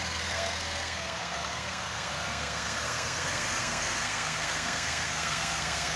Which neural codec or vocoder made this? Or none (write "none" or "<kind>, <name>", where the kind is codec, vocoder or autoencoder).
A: codec, SNAC